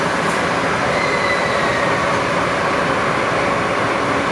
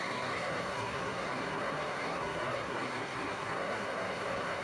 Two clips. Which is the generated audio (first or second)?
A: second